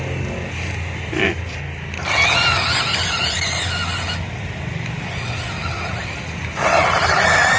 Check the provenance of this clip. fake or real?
real